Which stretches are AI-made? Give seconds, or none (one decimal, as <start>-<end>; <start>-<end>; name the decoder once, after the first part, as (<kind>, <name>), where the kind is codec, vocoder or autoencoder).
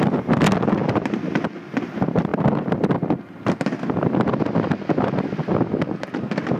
none